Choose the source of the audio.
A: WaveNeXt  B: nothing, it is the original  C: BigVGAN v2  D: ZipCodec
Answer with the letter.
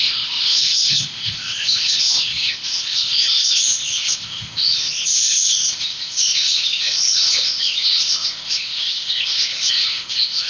D